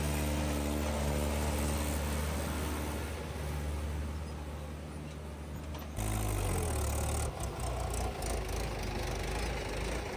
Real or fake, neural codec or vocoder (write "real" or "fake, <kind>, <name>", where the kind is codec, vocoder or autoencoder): real